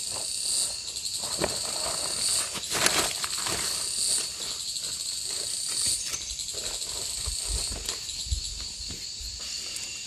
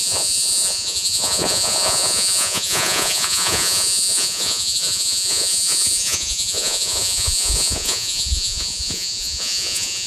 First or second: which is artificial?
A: second